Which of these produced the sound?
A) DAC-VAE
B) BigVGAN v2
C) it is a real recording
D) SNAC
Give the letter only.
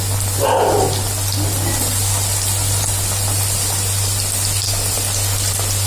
C